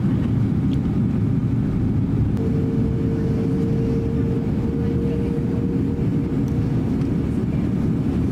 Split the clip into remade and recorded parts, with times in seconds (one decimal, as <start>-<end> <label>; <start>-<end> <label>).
0.0-8.3 recorded